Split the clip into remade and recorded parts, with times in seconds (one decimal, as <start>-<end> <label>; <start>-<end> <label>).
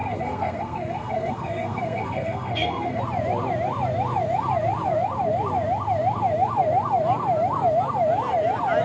0.0-3.0 remade; 3.0-8.8 recorded